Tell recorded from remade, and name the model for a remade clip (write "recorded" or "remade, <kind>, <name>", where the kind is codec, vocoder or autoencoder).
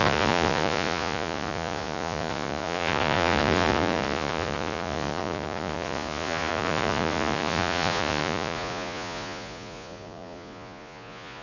remade, vocoder, Vocos